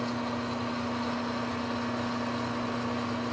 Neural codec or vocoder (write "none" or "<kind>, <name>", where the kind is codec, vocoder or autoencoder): none